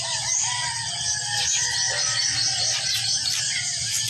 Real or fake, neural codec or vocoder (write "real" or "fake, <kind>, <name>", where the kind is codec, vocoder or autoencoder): real